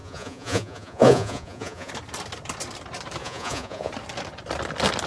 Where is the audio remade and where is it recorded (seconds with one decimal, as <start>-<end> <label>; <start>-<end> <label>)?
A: 0.0-1.9 remade; 1.9-3.2 recorded; 3.2-3.9 remade; 3.9-5.1 recorded